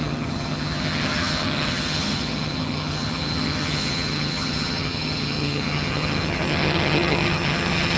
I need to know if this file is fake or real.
fake